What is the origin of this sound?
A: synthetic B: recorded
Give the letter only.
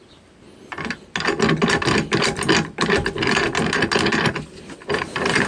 B